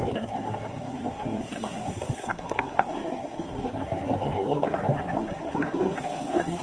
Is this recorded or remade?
remade